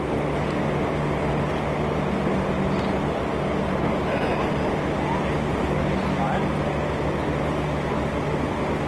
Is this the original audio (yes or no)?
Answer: yes